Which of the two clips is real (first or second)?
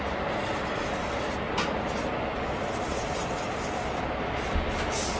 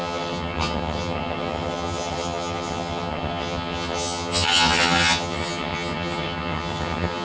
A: first